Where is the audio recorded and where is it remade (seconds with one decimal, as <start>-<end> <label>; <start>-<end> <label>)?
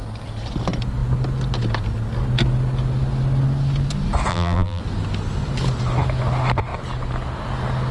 0.0-4.3 recorded; 4.3-4.8 remade; 4.8-7.9 recorded